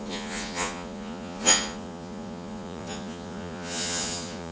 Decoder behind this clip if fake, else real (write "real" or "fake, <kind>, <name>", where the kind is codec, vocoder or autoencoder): fake, vocoder, Vocos